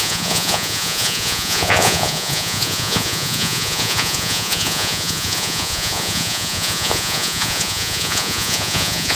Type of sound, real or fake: fake